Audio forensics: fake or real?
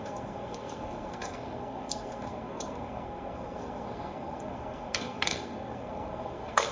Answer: fake